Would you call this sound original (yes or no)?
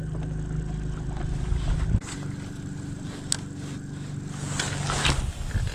yes